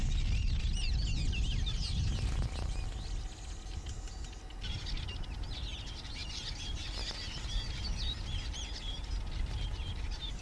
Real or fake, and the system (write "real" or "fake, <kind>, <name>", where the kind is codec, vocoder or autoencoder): real